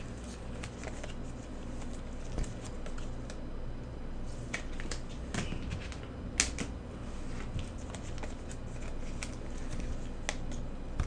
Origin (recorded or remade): recorded